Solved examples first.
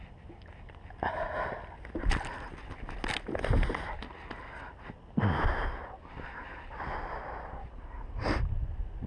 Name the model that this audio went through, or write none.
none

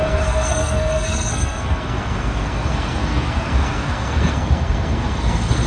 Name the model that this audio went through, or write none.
codec, SNAC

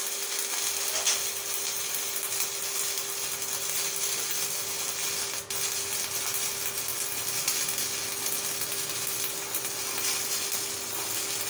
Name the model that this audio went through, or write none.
none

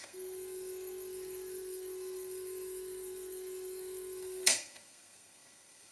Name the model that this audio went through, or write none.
codec, SNAC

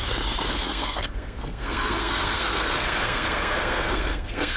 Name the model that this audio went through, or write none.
codec, SNAC